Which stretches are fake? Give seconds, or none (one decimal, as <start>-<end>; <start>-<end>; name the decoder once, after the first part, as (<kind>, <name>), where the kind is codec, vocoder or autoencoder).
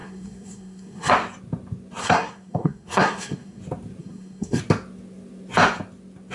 0.0-1.1 (codec, SNAC); 2.0-3.6; 4.0-4.6